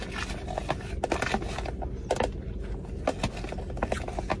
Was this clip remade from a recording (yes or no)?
no